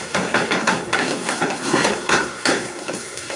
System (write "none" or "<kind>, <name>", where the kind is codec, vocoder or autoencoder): codec, SNAC